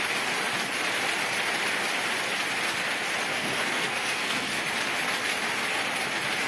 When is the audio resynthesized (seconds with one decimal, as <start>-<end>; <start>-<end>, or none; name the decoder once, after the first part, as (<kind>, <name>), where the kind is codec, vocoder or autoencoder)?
3.3-4.5 (codec, SNAC)